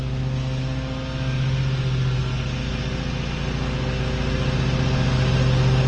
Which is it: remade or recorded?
recorded